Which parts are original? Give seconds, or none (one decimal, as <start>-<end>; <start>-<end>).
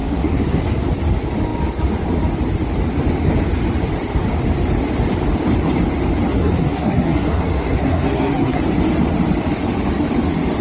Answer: 0.6-6.3; 8.6-10.6